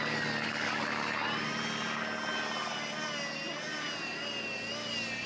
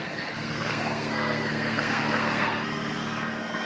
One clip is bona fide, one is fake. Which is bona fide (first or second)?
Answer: first